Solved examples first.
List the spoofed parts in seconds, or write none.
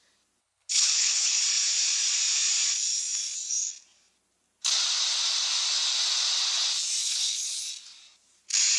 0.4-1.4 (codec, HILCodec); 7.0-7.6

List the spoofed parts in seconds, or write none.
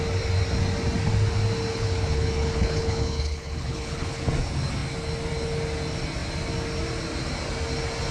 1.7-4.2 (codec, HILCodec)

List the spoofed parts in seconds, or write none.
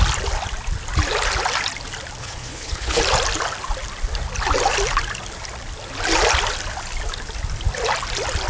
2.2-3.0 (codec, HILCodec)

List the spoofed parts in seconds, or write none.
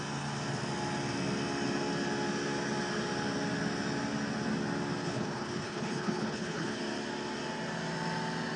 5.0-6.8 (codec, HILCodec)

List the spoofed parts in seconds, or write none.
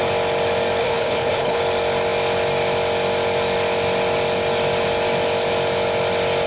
0.8-1.6 (codec, HILCodec)